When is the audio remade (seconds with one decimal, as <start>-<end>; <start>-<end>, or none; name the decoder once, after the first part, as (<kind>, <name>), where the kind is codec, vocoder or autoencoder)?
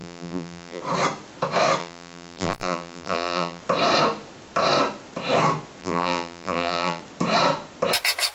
0.0-0.8 (vocoder, BigVGAN v2); 1.8-3.6; 5.8-7.0